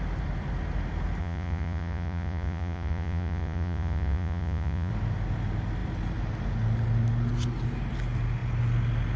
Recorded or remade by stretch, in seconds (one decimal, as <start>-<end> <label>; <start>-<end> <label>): 0.0-1.2 recorded; 1.2-4.9 remade; 4.9-9.2 recorded